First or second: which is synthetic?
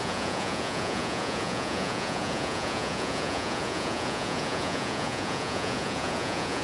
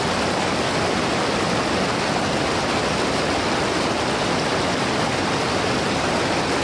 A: first